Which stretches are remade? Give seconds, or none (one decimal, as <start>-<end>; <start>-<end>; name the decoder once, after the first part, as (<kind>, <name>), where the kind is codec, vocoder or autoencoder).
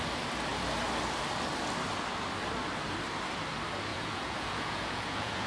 3.9-5.5 (vocoder, Vocos)